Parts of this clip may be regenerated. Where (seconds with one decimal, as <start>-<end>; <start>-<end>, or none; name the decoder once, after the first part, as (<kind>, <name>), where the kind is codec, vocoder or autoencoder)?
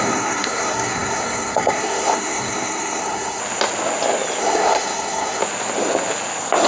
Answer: 0.0-3.4 (codec, SNAC); 4.4-5.4